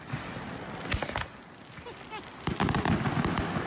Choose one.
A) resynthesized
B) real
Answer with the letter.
B